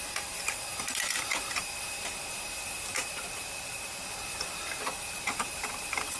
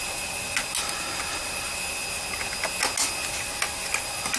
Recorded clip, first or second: second